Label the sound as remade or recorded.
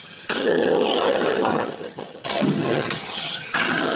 remade